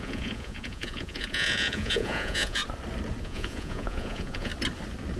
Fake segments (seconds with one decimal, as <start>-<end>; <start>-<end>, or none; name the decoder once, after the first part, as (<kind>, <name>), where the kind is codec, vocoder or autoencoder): 0.0-2.6 (vocoder, Vocos); 3.2-4.5